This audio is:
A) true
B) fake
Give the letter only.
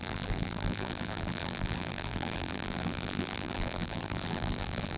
B